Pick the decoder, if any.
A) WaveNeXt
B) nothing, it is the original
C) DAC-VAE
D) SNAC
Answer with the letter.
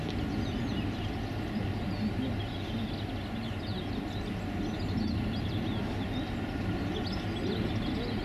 B